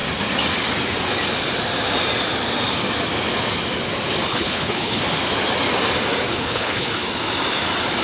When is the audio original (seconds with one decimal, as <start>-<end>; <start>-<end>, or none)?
0.0-4.3; 5.0-6.3; 6.9-8.0

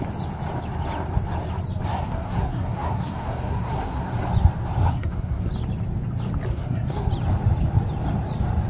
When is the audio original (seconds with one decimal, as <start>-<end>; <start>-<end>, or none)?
0.0-1.9; 4.1-4.8; 5.5-6.5; 7.1-8.7

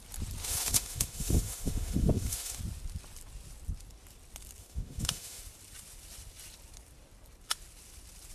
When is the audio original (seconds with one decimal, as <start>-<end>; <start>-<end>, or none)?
0.0-0.4; 2.6-4.6; 5.4-8.3

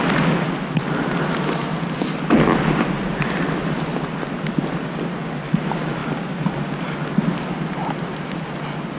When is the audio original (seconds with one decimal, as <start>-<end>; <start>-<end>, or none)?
0.0-9.0

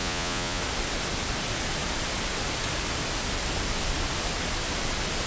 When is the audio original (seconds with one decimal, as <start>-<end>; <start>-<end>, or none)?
0.6-5.3

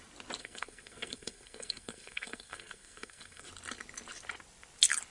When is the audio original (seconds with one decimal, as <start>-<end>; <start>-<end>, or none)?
0.0-0.4; 3.5-5.1